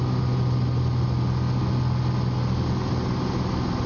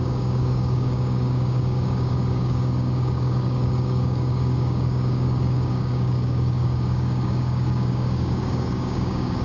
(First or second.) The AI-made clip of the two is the second